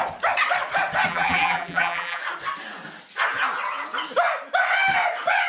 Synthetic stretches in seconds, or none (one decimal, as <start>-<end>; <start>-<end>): 1.1-2.2